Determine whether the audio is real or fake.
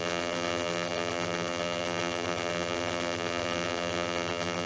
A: fake